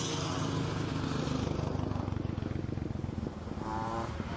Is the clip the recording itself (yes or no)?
yes